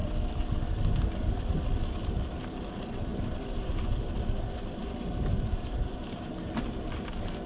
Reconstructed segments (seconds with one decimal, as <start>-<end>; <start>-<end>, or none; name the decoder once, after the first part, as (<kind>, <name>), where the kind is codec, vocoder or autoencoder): 3.1-3.7 (vocoder, BigVGAN v2); 4.8-6.3